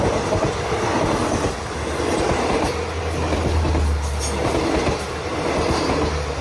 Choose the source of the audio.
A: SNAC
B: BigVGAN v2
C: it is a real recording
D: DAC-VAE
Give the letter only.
C